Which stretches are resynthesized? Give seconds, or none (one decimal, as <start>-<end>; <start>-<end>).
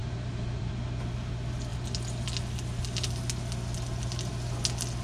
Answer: 0.0-0.7